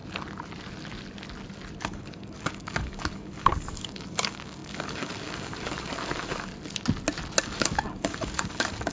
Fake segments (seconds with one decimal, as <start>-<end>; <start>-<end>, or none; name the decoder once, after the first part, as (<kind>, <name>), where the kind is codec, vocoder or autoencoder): 1.8-6.5 (codec, DAC); 7.4-8.9